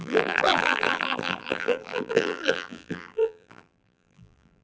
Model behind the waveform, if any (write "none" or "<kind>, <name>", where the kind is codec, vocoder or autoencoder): vocoder, BigVGAN v2